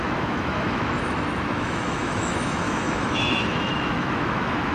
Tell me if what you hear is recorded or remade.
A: remade